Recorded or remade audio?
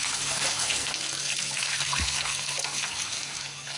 remade